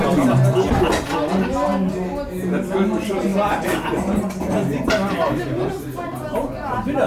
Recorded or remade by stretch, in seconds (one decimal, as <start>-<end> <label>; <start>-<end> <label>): 0.0-7.1 recorded